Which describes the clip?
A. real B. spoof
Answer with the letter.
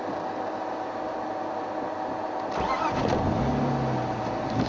A